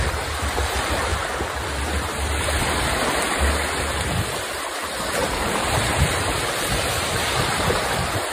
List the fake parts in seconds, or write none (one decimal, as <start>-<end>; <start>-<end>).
0.0-1.1; 4.2-8.3